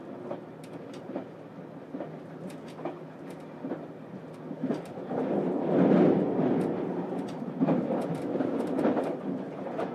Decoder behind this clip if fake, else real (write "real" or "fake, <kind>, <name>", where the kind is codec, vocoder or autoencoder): real